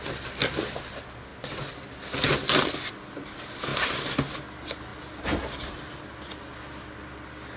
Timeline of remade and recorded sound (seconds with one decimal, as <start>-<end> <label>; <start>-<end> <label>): 0.0-7.6 recorded